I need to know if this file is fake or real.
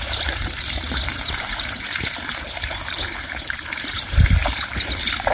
fake